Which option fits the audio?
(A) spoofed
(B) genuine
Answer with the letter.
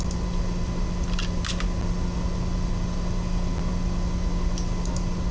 B